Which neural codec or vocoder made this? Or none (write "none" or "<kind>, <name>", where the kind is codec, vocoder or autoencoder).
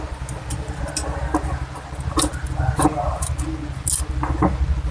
none